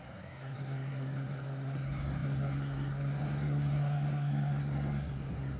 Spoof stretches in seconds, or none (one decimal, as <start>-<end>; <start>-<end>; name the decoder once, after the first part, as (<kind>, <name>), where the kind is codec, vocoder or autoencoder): 0.0-5.6 (codec, SNAC)